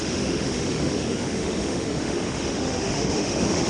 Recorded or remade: remade